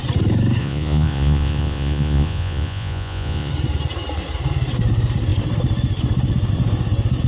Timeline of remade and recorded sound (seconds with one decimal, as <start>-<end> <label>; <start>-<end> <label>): 0.0-0.6 recorded; 0.6-3.5 remade; 3.5-7.3 recorded